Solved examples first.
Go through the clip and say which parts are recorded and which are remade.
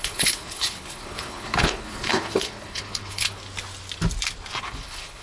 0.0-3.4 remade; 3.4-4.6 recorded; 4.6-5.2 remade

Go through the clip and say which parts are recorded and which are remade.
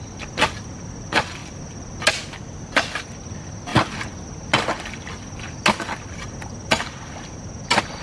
0.0-8.0 recorded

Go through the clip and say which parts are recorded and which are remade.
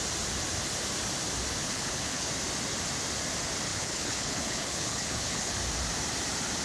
0.0-1.6 recorded; 1.6-2.3 remade; 2.3-3.7 recorded; 3.7-5.5 remade; 5.5-6.6 recorded